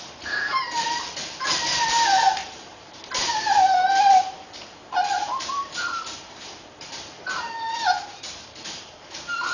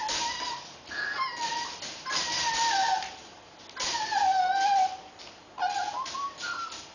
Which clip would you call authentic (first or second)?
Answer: second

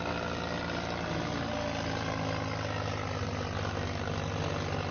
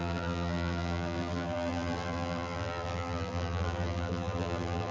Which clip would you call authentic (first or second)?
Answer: first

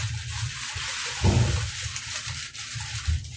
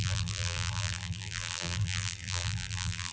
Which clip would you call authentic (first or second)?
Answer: first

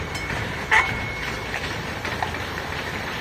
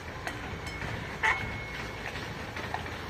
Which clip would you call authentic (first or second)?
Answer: second